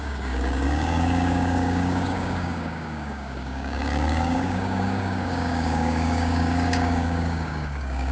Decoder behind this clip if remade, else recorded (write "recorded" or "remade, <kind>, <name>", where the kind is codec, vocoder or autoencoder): remade, codec, DAC